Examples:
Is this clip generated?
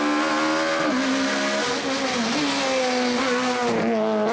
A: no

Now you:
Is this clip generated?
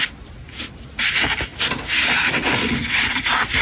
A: no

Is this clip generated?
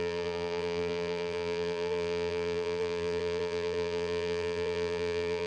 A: yes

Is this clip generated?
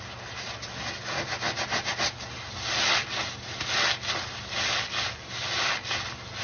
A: no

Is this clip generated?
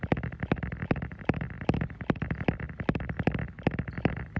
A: no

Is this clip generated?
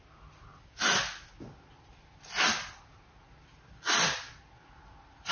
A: no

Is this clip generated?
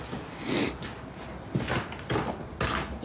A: no